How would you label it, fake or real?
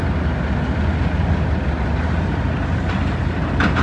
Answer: real